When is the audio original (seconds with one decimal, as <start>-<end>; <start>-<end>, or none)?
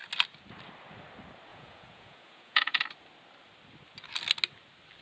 0.0-1.5; 2.8-5.0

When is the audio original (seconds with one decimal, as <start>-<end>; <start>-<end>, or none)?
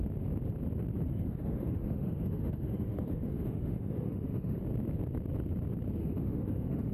0.0-1.1; 4.6-6.0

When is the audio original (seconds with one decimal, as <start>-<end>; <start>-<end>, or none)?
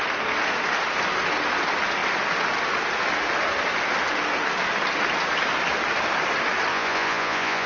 0.0-6.7